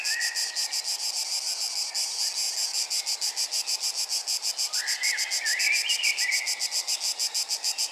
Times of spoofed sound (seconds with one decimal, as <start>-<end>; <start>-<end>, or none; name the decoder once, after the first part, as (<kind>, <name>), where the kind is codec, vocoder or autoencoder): none